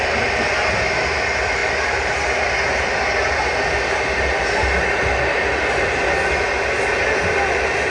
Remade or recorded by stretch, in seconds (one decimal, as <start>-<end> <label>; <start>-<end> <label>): 0.0-7.9 recorded